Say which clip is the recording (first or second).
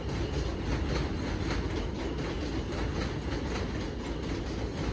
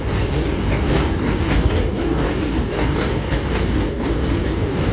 first